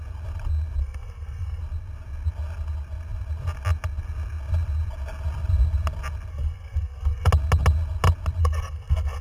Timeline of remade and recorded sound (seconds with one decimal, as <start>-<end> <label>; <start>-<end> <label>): 0.0-0.8 recorded; 0.8-1.6 remade; 1.6-6.3 recorded; 6.3-7.3 remade; 7.3-8.4 recorded; 8.4-9.2 remade